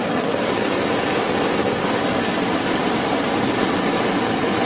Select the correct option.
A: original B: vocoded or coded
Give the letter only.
A